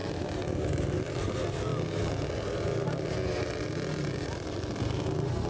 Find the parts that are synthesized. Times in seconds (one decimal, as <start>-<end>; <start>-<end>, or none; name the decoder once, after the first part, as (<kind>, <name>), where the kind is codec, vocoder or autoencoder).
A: none